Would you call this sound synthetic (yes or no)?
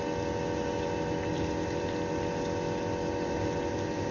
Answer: no